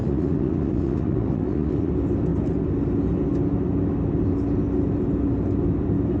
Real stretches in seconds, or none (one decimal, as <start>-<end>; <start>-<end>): 1.9-6.2